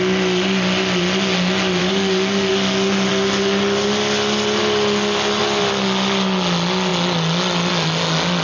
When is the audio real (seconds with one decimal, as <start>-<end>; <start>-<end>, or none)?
0.0-1.8; 2.5-8.4